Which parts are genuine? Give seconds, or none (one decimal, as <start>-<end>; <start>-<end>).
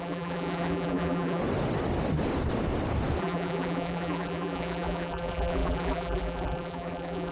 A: 1.4-3.2